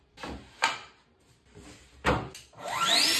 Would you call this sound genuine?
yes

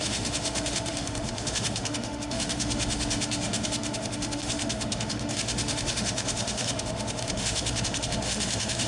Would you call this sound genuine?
no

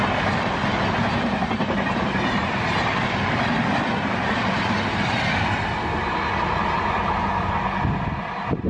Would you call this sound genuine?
yes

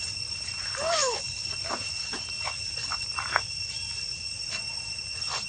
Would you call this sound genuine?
yes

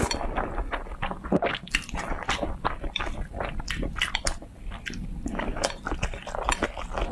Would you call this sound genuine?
yes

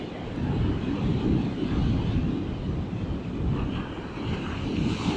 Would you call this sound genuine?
yes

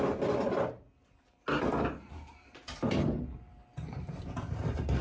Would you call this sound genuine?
yes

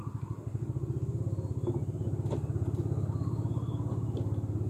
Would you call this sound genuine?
yes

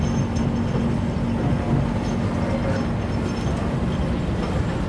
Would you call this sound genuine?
yes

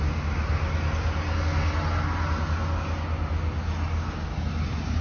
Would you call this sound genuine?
yes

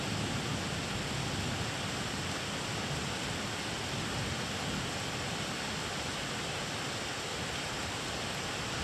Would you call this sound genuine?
yes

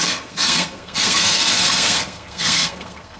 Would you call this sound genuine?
no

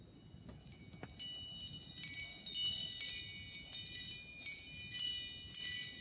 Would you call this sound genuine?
yes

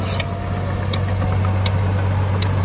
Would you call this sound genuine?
yes